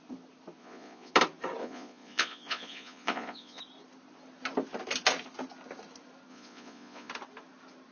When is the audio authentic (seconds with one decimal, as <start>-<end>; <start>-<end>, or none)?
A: 0.0-0.6; 1.1-1.6; 3.6-6.3; 7.1-7.9